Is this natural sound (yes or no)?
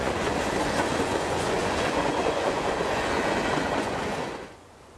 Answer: no